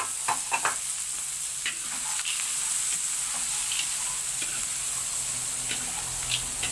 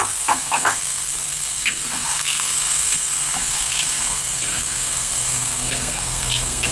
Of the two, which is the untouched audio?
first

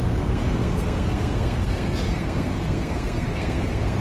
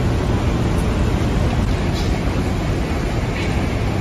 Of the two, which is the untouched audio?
second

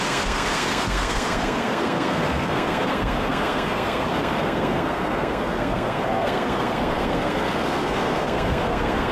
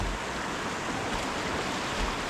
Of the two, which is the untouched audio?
second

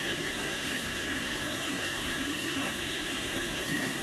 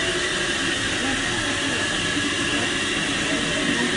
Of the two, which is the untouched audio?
second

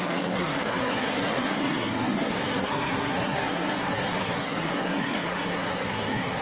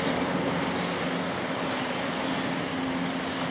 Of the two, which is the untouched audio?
second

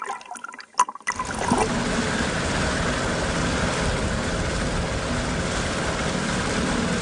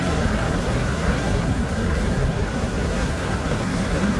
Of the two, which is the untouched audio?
first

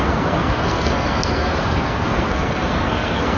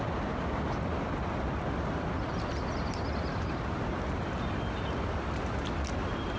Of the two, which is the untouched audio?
second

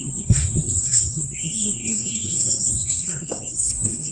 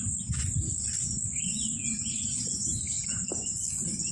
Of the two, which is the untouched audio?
second